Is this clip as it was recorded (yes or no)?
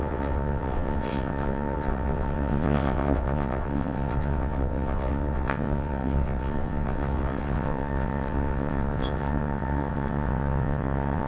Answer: no